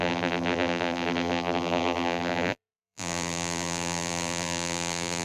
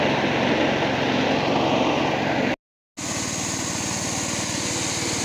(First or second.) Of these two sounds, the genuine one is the second